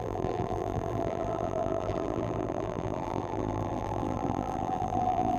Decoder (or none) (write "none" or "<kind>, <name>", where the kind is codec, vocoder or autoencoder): vocoder, BigVGAN v2